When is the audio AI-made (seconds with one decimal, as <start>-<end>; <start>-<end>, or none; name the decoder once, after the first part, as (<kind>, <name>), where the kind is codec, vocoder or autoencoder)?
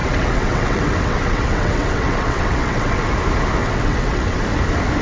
0.0-3.0 (vocoder, WaveNeXt); 3.6-4.4